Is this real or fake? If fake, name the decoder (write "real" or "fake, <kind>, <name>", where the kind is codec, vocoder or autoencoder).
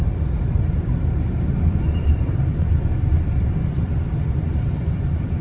fake, vocoder, BigVGAN v2